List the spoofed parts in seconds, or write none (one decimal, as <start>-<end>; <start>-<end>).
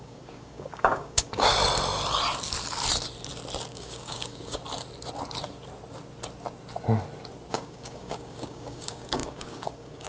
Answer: 0.0-1.5; 3.7-4.6; 7.5-10.1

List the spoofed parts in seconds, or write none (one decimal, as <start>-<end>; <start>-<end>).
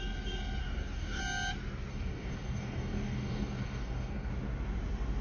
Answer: 0.6-1.2; 1.9-4.3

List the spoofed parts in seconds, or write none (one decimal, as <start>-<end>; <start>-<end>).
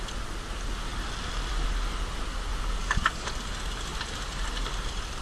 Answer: 2.8-3.3